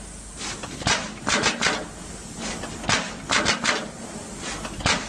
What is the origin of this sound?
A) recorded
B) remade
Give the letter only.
A